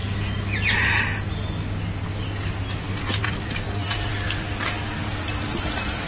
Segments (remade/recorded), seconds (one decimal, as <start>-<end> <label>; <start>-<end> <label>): 0.0-3.2 recorded; 3.2-4.1 remade; 4.1-5.0 recorded; 5.0-6.1 remade

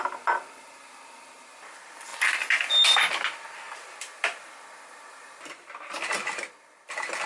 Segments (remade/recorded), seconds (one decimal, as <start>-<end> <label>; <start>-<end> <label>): 0.0-7.3 recorded

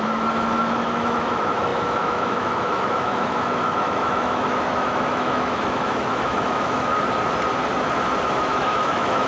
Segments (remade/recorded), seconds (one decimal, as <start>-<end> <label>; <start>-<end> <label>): 0.0-6.9 remade; 6.9-8.2 recorded; 8.2-9.3 remade

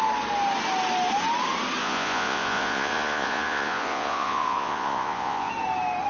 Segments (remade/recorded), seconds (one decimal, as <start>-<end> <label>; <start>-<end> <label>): 0.0-1.8 recorded; 1.8-5.5 remade; 5.5-6.1 recorded

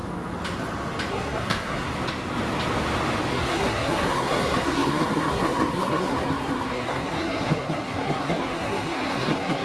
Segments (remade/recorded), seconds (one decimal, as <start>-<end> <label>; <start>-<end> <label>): 0.0-1.1 recorded; 1.1-1.9 remade; 1.9-3.3 recorded; 3.3-9.6 remade

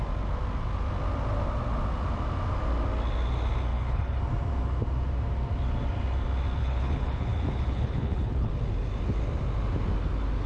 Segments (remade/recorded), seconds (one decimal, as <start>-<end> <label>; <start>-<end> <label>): 0.0-3.7 recorded; 3.7-4.2 remade; 4.2-6.6 recorded; 6.6-8.5 remade; 8.5-10.5 recorded